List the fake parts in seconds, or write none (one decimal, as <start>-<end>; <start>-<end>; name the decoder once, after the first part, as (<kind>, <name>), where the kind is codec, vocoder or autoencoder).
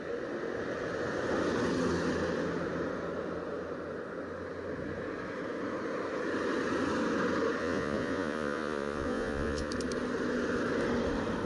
7.6-9.7 (vocoder, Vocos)